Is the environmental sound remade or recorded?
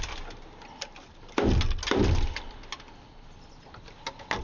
recorded